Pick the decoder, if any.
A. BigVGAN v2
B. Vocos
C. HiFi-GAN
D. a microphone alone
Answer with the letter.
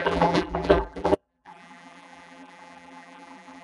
A